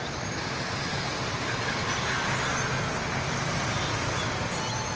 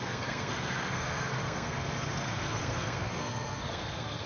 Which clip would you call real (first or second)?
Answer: first